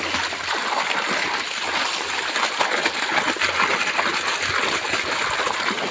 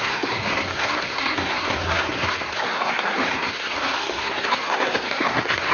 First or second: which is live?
first